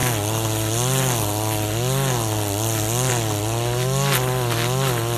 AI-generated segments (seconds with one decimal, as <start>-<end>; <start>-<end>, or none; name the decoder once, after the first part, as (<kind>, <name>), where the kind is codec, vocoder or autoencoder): none

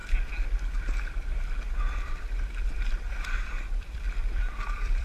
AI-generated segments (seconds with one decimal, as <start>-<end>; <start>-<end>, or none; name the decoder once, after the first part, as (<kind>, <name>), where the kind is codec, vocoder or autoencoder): 3.0-5.0 (vocoder, BigVGAN v2)